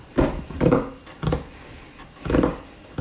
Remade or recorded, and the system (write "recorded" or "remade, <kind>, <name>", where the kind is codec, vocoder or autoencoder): remade, vocoder, BigVGAN v2